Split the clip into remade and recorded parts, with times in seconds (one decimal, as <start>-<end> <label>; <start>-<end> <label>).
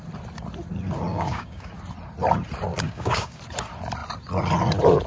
0.0-1.1 recorded; 1.1-1.7 remade; 1.7-2.7 recorded; 2.7-3.4 remade; 3.4-5.1 recorded